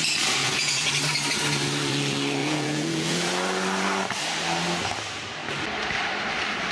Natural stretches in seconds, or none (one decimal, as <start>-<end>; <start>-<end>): 0.0-0.4; 0.9-2.4; 3.3-6.7